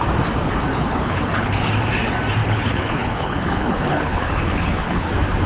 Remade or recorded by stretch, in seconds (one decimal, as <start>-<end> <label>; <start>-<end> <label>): 0.0-0.7 recorded; 0.7-1.7 remade; 1.7-2.4 recorded; 2.4-5.1 remade; 5.1-5.5 recorded